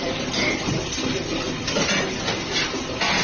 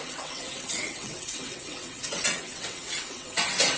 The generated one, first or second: second